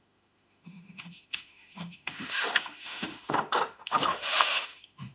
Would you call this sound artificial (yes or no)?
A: yes